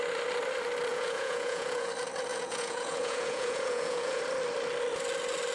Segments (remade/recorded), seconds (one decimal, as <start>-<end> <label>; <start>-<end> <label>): 0.0-0.9 recorded; 0.9-1.9 remade; 1.9-2.3 recorded; 2.3-4.2 remade; 4.2-5.5 recorded